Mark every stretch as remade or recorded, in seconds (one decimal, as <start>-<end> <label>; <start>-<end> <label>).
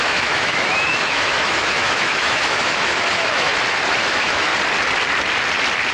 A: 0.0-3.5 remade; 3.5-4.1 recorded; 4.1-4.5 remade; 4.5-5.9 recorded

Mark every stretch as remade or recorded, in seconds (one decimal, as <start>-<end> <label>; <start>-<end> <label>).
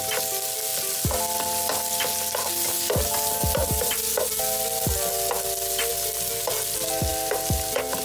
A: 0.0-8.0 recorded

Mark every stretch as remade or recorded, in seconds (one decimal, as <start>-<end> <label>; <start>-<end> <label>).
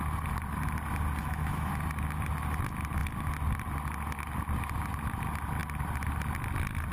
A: 0.0-1.2 recorded; 1.2-1.7 remade; 1.7-6.9 recorded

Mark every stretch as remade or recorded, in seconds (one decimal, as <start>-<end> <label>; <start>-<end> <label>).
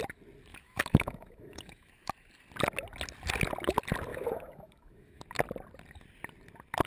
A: 0.0-0.5 recorded; 0.5-2.1 remade; 2.1-4.1 recorded; 4.1-5.2 remade; 5.2-6.9 recorded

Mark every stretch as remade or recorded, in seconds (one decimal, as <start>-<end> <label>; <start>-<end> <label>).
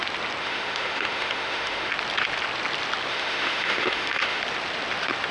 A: 0.0-0.4 recorded; 0.4-1.9 remade; 1.9-3.1 recorded; 3.1-4.4 remade; 4.4-5.3 recorded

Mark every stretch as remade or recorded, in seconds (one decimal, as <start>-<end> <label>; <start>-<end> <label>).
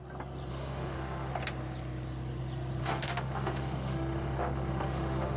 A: 0.0-0.5 recorded; 0.5-1.3 remade; 1.3-2.8 recorded; 2.8-5.4 remade